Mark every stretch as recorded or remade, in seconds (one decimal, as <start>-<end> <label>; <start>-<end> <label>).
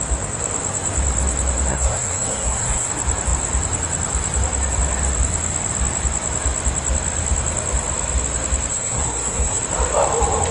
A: 0.0-1.7 recorded; 1.7-2.9 remade; 2.9-8.7 recorded; 8.7-9.6 remade; 9.6-10.5 recorded